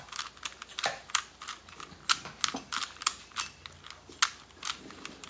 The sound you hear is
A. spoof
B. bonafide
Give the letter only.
B